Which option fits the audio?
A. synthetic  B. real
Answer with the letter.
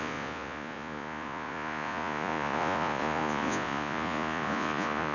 A